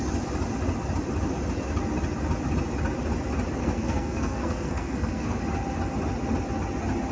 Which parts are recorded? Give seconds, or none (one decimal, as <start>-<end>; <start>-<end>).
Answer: 0.0-3.6; 5.4-7.1